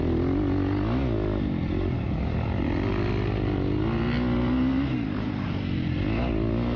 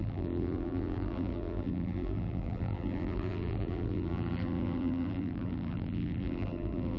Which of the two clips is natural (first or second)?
first